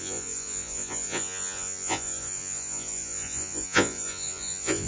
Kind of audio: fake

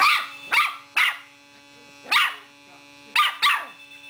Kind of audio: real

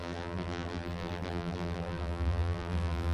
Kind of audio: fake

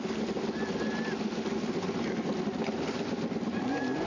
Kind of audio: real